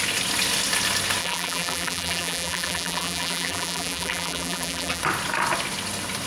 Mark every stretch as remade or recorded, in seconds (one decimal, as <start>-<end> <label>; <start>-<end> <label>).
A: 0.0-1.2 recorded; 1.2-5.0 remade; 5.0-6.3 recorded

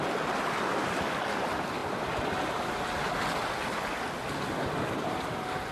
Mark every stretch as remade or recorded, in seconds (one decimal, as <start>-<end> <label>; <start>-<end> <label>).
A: 0.0-5.7 recorded